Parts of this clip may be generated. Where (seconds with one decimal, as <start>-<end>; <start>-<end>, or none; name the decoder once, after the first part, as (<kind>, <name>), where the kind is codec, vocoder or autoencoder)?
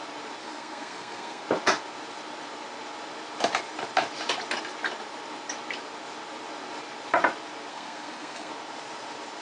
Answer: 0.4-1.4 (codec, SNAC); 7.7-8.5